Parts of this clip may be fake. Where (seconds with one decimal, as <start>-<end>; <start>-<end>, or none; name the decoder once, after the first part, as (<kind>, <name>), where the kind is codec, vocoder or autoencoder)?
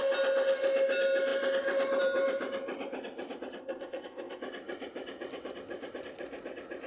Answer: 3.6-4.4 (codec, ZipCodec)